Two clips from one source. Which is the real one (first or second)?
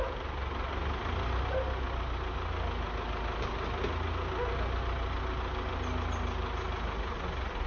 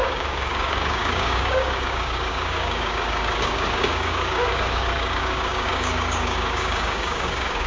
first